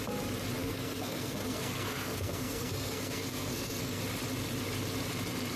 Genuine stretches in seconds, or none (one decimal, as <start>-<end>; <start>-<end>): 0.0-0.6; 4.0-5.6